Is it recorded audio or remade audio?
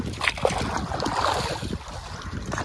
recorded